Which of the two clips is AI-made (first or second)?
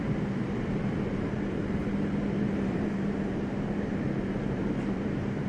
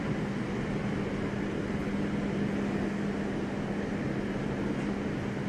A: first